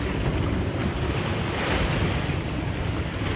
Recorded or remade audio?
recorded